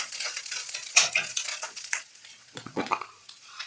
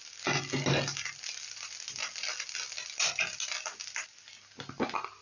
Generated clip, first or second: first